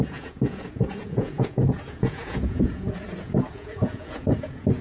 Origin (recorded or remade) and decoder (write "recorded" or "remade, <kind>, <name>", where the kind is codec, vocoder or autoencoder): remade, vocoder, Vocos